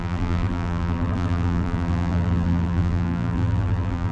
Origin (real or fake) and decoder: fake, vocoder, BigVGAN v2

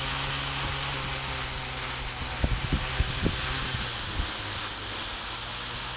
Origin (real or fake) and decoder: real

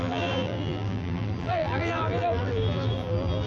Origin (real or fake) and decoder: fake, vocoder, BigVGAN v2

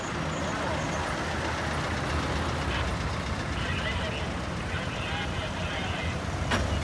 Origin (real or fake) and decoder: real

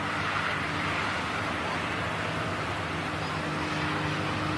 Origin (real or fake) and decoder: real